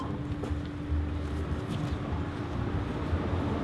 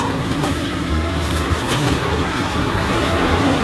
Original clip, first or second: first